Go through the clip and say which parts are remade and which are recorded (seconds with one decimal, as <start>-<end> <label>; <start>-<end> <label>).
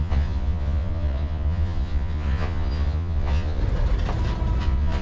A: 0.0-3.6 remade; 3.6-4.6 recorded; 4.6-5.0 remade